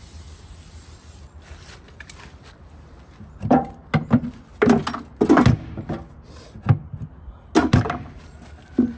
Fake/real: real